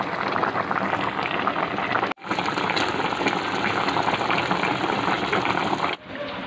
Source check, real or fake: real